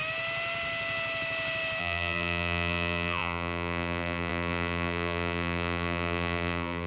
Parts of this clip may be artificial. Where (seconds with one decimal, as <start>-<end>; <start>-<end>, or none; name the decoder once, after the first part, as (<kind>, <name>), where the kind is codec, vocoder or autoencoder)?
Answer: 1.8-6.9 (vocoder, BigVGAN v2)